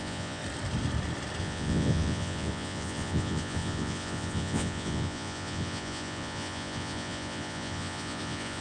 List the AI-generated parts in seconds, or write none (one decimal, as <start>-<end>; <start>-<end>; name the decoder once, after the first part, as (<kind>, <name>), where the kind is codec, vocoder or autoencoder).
0.0-0.4 (vocoder, Vocos); 1.4-8.6